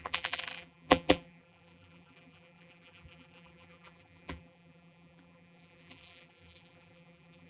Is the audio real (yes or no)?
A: no